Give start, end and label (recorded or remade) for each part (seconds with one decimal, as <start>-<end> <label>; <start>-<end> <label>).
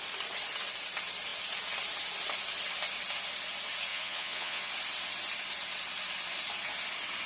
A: 0.0-3.9 recorded; 3.9-4.7 remade; 4.7-7.3 recorded